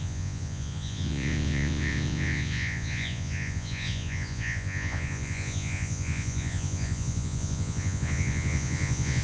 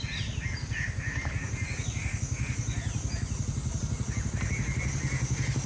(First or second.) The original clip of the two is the second